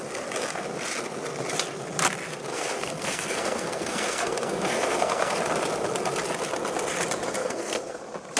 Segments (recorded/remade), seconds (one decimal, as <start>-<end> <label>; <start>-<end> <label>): 0.0-2.5 recorded; 2.5-5.4 remade; 5.4-7.4 recorded; 7.4-8.0 remade; 8.0-8.4 recorded